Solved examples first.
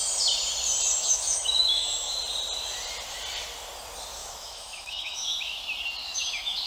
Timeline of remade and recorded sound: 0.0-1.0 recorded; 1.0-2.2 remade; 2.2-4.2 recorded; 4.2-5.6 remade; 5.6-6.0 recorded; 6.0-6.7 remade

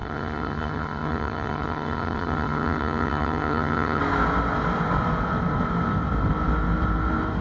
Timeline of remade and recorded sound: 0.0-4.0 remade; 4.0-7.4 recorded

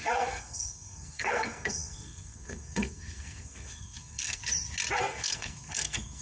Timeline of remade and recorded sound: 0.0-4.4 remade; 4.4-5.0 recorded; 5.0-6.2 remade